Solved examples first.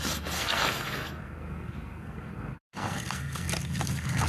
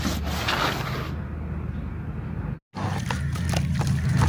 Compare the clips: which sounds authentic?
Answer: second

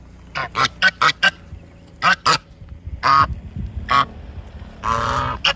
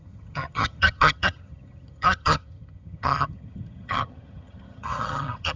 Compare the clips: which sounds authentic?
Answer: first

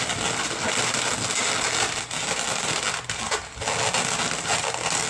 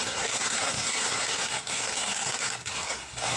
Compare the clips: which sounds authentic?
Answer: first